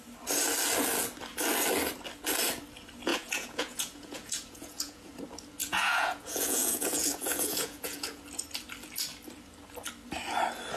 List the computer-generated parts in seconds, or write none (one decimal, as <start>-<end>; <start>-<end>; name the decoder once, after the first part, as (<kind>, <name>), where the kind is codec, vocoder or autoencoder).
3.1-5.1 (vocoder, Vocos); 5.6-8.2